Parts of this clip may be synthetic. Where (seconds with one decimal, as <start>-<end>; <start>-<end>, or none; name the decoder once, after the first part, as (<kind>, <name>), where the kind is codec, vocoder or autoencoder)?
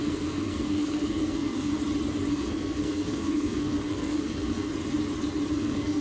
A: 0.0-1.7 (codec, SNAC); 2.3-4.7; 5.5-6.0